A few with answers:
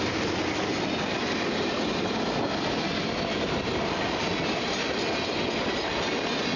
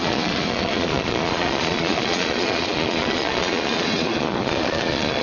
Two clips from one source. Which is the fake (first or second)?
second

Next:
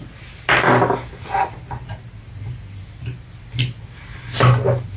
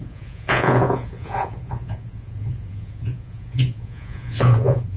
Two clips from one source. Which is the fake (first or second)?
second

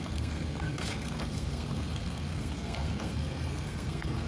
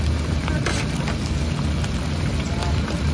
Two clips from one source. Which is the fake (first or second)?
first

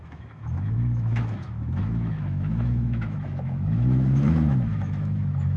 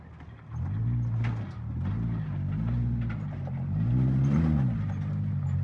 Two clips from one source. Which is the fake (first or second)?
first